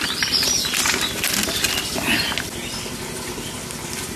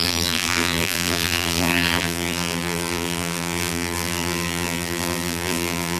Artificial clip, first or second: second